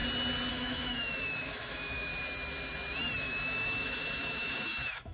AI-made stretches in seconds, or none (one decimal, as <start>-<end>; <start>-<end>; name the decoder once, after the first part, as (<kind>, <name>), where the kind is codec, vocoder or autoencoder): 0.5-2.1 (autoencoder, DAC-VAE); 3.2-5.1